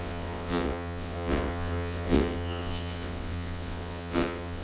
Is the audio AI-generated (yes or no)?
yes